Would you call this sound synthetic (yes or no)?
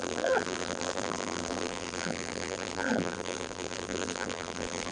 yes